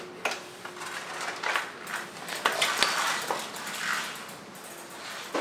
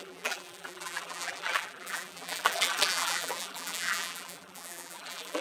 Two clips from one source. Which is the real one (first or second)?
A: first